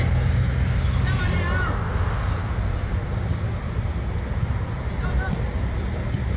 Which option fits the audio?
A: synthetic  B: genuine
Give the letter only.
B